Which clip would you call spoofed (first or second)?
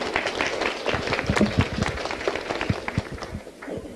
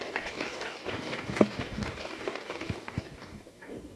second